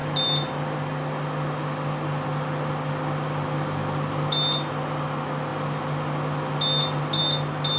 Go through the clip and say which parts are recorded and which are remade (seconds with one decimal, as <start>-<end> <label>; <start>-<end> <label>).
0.0-7.8 recorded